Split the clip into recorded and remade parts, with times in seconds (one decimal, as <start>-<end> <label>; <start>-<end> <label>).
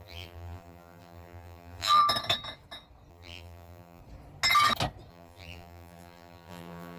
0.0-2.0 remade; 2.0-3.1 recorded; 3.1-4.0 remade; 4.0-5.1 recorded; 5.1-7.0 remade